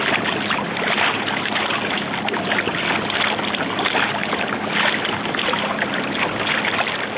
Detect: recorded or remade recorded